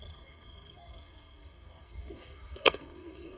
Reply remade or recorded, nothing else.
remade